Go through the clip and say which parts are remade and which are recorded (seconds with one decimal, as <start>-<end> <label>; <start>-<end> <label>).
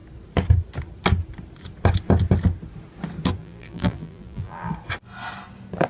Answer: 0.0-3.4 recorded; 3.4-4.7 remade; 4.7-5.9 recorded